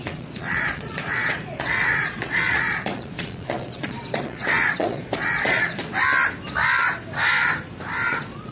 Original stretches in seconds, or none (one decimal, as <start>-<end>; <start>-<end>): 5.8-8.1